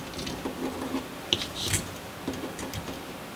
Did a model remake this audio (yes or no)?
no